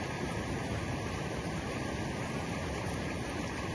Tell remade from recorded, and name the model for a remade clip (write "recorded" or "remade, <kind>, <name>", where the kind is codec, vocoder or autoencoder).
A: remade, vocoder, BigVGAN v2